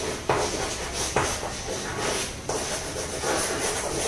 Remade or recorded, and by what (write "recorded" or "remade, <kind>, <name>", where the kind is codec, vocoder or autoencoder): recorded